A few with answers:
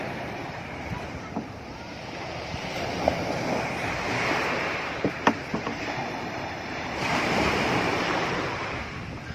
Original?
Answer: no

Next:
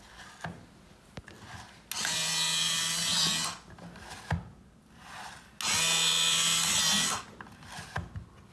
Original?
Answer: yes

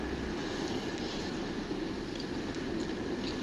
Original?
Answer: yes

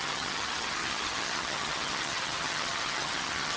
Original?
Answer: no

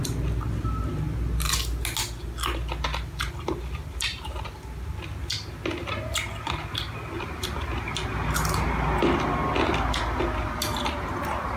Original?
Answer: yes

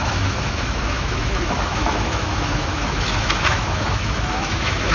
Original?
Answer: no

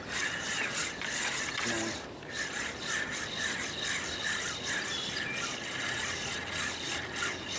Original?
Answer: yes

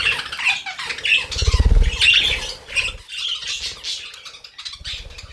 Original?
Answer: yes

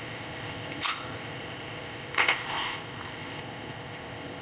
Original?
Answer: no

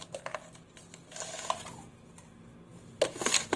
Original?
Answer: yes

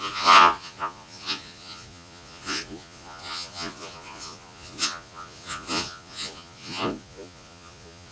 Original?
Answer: no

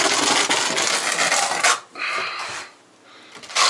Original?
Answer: yes